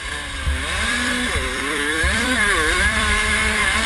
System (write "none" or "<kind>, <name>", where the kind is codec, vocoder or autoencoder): vocoder, BigVGAN v2